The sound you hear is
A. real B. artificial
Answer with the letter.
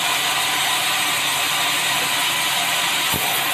A